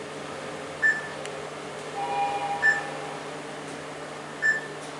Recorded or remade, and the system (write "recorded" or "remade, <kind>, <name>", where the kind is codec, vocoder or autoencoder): recorded